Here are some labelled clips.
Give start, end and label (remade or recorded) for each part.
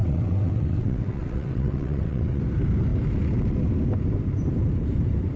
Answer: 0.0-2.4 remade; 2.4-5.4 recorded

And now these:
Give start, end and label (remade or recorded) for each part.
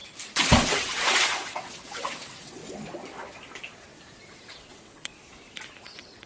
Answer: 0.0-0.7 recorded; 0.7-2.6 remade; 2.6-4.4 recorded; 4.4-5.1 remade; 5.1-5.8 recorded; 5.8-6.3 remade